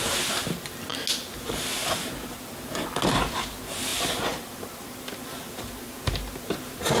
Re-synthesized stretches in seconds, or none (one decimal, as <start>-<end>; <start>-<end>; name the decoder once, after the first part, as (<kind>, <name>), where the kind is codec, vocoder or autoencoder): none